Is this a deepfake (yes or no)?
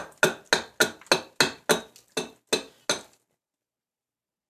no